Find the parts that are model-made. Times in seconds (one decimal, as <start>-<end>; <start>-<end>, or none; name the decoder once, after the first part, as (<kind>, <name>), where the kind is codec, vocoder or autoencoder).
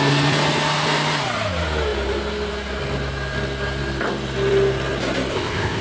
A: 5.3-5.8 (codec, ZipCodec)